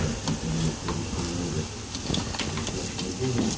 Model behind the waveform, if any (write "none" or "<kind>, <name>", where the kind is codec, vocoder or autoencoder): none